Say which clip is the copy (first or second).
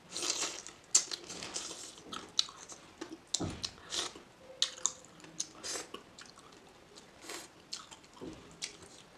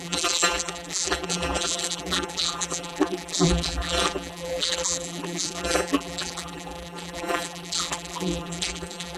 second